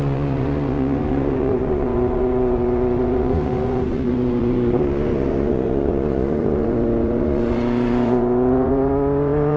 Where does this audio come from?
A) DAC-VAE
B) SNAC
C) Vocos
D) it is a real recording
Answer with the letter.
C